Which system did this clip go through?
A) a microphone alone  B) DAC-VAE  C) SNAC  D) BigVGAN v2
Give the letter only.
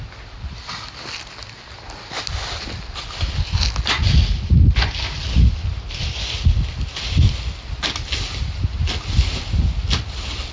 A